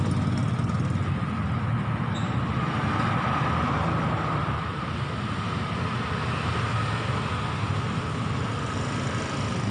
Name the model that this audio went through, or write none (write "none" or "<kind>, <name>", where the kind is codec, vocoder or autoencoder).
none